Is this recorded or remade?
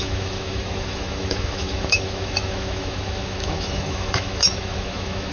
remade